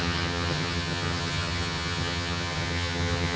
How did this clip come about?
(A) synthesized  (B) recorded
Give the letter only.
A